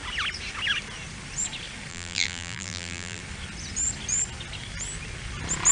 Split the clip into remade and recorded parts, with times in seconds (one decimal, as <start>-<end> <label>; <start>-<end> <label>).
0.0-1.9 recorded; 1.9-3.2 remade; 3.2-5.7 recorded